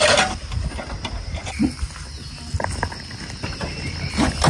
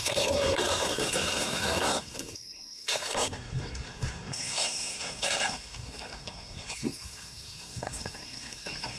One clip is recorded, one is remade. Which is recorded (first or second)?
first